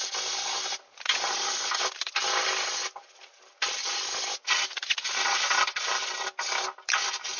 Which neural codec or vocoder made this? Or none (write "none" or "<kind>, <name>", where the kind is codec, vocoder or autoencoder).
none